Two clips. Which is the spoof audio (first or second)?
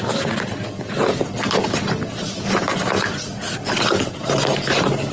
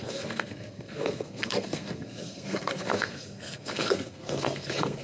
second